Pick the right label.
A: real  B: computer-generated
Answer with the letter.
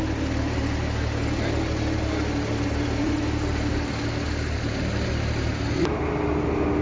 A